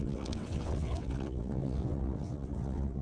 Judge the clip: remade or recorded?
remade